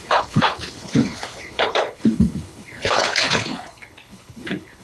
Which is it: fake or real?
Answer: fake